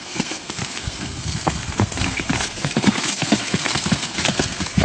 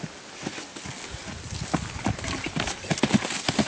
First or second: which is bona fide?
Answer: second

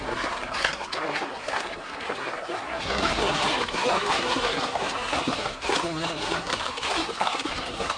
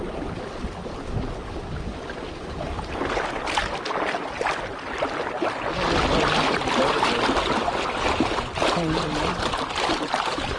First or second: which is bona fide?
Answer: second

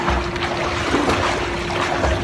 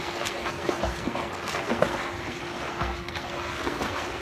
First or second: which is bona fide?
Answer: first